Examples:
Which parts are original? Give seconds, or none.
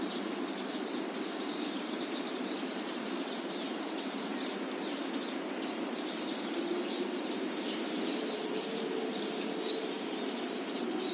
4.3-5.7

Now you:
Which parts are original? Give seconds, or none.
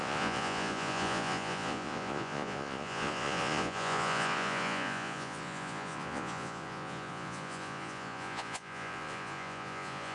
none